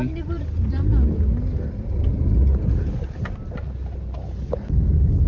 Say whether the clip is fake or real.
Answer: real